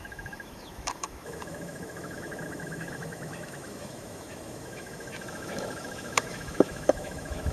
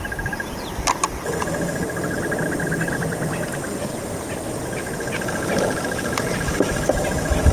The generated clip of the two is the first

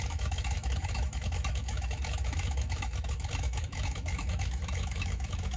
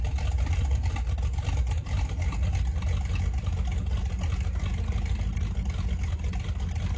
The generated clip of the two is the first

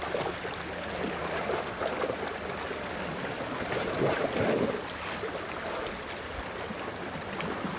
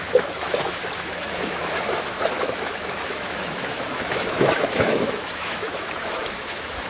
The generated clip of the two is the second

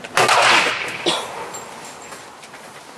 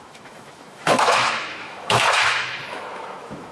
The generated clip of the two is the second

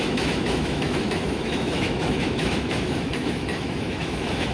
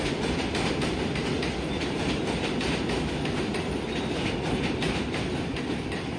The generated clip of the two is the first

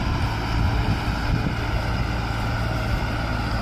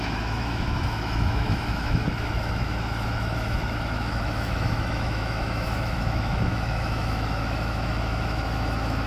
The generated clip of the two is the second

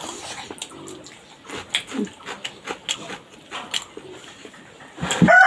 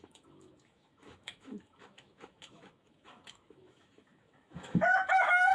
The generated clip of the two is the second